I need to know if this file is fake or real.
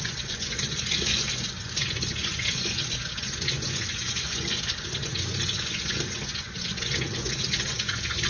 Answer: fake